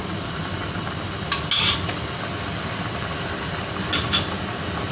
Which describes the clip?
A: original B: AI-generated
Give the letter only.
A